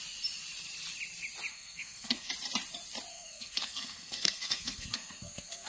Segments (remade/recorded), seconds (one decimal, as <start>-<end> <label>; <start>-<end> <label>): 0.0-1.5 recorded; 1.5-2.3 remade; 2.3-3.1 recorded; 3.1-5.7 remade

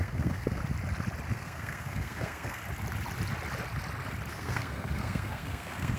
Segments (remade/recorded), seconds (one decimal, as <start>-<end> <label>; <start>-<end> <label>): 0.0-0.6 remade; 0.6-1.3 recorded; 1.3-2.6 remade; 2.6-4.3 recorded; 4.3-6.0 remade

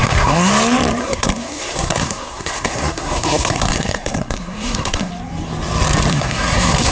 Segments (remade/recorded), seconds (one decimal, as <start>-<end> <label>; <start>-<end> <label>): 0.0-0.5 remade; 0.5-1.0 recorded; 1.0-5.1 remade; 5.1-6.1 recorded; 6.1-6.9 remade

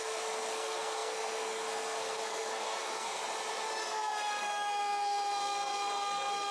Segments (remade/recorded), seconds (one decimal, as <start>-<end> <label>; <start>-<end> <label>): 0.0-3.2 remade; 3.2-3.8 recorded; 3.8-6.5 remade

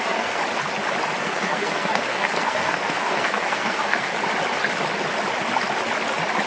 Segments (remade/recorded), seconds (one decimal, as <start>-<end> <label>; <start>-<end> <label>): 0.0-0.4 remade; 0.4-1.2 recorded; 1.2-4.1 remade; 4.1-6.5 recorded

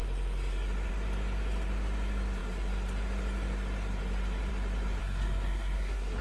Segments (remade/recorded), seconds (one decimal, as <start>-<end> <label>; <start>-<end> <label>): 0.0-5.0 recorded; 5.0-6.2 remade